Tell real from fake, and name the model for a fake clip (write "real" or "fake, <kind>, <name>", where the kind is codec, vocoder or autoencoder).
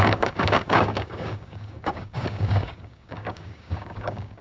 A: fake, codec, DAC